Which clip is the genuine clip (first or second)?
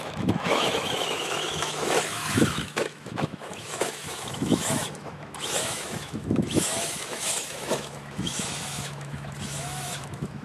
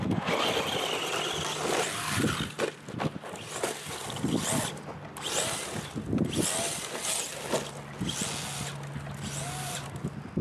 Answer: second